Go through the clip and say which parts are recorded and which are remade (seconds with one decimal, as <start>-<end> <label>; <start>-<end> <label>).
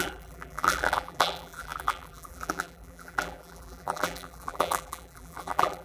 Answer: 0.0-5.8 remade